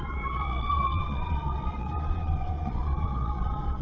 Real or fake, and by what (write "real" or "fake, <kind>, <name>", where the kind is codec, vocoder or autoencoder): fake, vocoder, Vocos